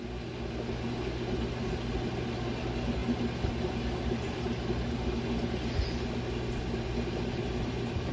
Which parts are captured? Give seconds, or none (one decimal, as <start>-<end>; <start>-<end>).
0.0-8.1